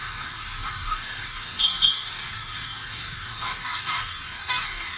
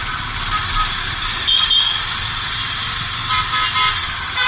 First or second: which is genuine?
second